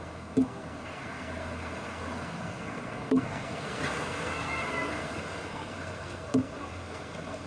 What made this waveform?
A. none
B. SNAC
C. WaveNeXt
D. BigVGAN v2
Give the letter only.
B